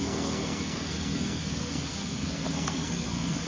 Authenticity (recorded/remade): remade